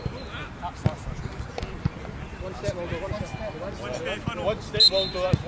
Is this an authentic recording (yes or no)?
yes